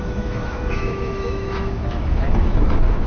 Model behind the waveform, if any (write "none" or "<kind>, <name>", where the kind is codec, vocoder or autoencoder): autoencoder, DAC-VAE